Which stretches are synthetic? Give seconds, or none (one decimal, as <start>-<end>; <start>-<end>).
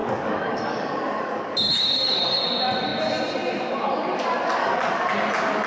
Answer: 0.0-2.4; 4.6-5.1